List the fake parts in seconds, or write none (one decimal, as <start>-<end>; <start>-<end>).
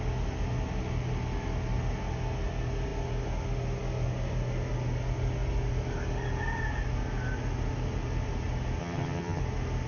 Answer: 8.8-9.4